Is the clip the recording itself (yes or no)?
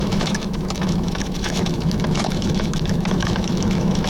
no